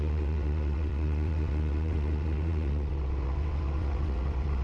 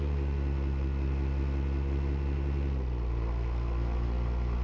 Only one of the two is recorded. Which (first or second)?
second